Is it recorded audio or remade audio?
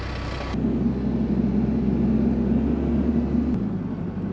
recorded